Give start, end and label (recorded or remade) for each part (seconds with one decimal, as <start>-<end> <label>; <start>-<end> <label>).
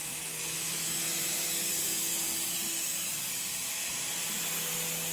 0.0-0.9 remade; 0.9-5.1 recorded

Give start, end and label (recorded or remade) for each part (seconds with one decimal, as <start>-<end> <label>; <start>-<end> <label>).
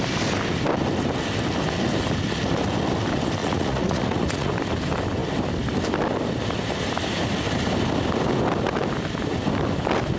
0.0-3.4 recorded; 3.4-4.5 remade; 4.5-10.2 recorded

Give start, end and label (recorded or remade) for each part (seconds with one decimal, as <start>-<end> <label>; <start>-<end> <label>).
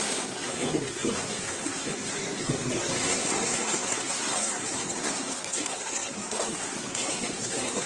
0.0-7.9 remade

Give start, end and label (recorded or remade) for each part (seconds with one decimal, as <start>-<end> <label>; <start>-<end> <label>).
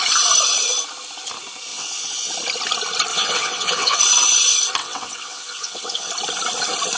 0.0-1.7 recorded; 1.7-2.3 remade; 2.3-3.1 recorded; 3.1-4.0 remade; 4.0-4.8 recorded; 4.8-6.1 remade; 6.1-7.0 recorded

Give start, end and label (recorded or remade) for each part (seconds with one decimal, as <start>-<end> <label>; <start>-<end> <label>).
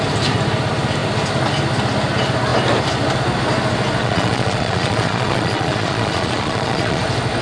0.0-4.0 recorded; 4.0-7.0 remade; 7.0-7.4 recorded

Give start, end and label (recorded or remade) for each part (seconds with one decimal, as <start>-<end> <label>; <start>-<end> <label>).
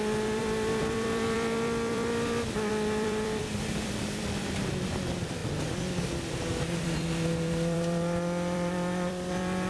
0.0-9.7 remade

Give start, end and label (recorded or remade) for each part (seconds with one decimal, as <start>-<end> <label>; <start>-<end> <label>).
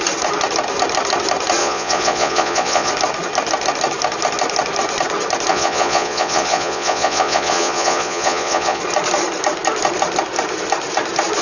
0.0-1.6 recorded; 1.6-2.9 remade; 2.9-5.5 recorded; 5.5-8.8 remade; 8.8-11.4 recorded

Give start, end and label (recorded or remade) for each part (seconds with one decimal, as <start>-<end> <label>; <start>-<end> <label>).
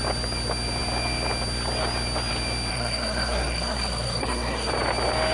0.0-2.7 recorded; 2.7-4.7 remade; 4.7-5.3 recorded